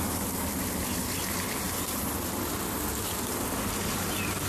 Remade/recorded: recorded